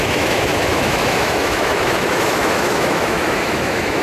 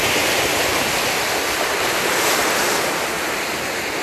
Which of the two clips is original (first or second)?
second